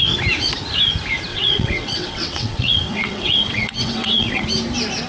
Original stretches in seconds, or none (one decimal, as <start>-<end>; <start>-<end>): 0.0-1.3; 4.4-5.1